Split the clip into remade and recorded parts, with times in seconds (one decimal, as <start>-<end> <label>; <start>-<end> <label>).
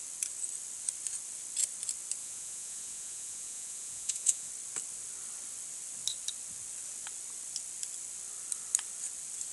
0.0-2.2 recorded; 2.2-4.5 remade; 4.5-9.5 recorded